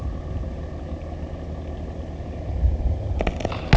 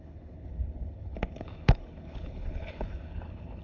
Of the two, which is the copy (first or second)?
second